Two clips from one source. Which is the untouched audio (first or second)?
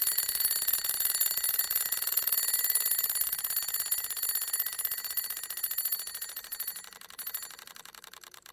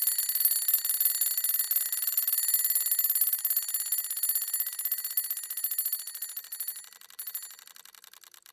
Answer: second